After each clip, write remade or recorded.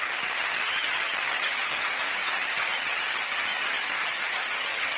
remade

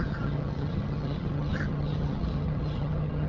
remade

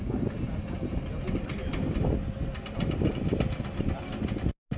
recorded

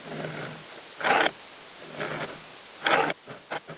recorded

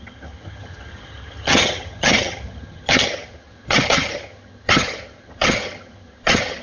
remade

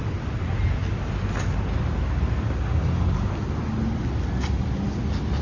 recorded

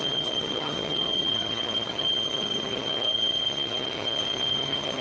remade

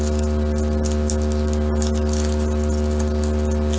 recorded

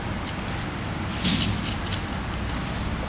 recorded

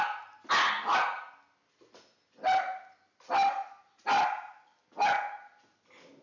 recorded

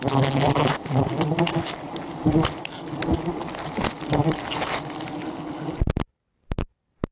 recorded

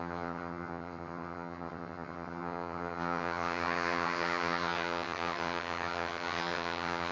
remade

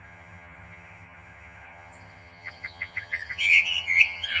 remade